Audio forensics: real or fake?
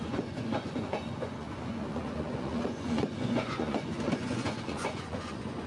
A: fake